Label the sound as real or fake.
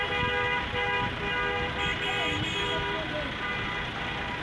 real